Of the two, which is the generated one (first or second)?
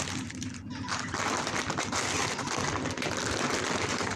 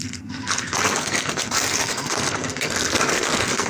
second